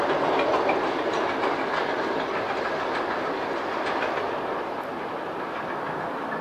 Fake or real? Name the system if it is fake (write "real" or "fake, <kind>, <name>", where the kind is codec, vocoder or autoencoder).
real